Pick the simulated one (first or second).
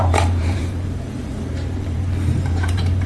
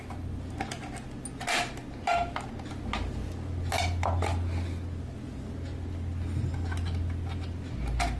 first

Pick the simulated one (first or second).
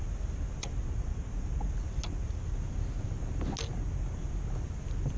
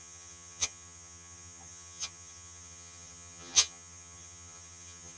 second